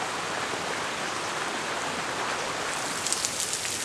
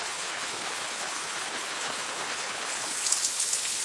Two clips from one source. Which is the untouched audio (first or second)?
first